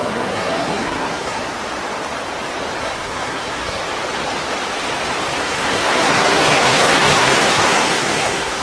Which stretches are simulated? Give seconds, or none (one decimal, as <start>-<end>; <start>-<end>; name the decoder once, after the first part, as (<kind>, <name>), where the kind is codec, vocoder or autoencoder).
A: 0.0-1.4 (codec, SNAC); 2.8-3.8; 5.4-8.6